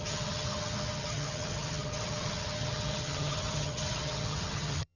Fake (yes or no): yes